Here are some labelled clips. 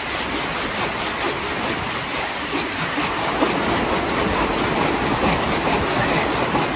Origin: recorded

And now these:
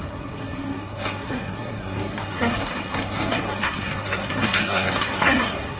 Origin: remade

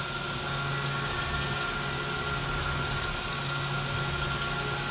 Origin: recorded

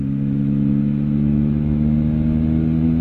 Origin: remade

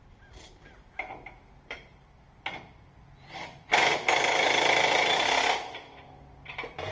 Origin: remade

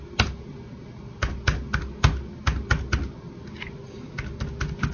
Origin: recorded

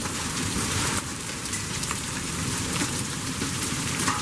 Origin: remade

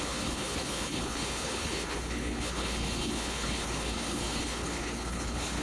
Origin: remade